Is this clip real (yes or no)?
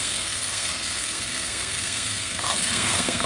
no